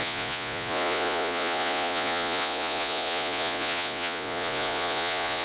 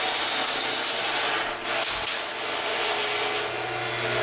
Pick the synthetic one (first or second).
first